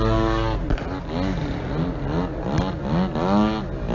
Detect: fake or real real